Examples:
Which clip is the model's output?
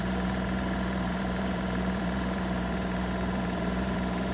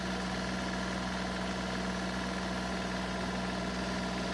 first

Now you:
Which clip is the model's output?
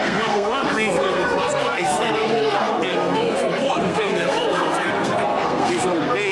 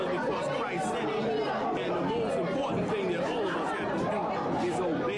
first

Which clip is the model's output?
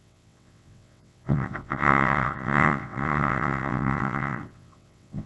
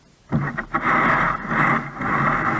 first